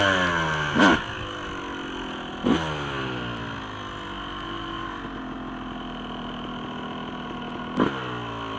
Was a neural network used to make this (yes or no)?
no